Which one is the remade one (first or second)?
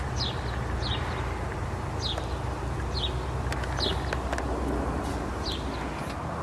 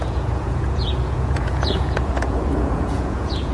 second